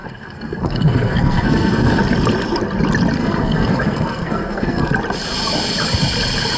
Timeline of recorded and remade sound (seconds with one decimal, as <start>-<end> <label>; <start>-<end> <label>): 0.0-2.0 remade; 2.0-3.2 recorded; 3.2-4.9 remade; 4.9-6.6 recorded